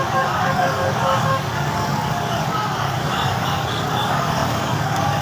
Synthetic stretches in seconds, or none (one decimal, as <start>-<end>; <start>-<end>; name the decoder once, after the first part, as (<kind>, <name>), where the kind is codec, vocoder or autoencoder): 0.0-5.2 (codec, DAC)